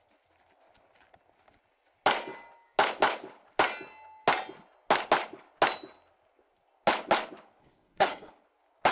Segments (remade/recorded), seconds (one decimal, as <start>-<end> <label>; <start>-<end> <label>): 0.0-7.6 recorded; 7.6-8.3 remade; 8.3-8.9 recorded